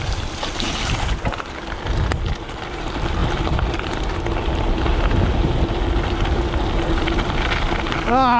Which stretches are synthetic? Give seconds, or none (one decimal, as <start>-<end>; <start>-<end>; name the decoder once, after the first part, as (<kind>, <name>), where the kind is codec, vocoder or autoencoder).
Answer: none